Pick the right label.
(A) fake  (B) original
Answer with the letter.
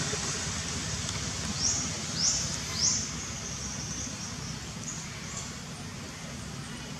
B